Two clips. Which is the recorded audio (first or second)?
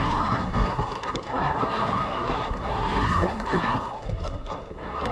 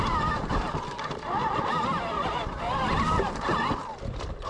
second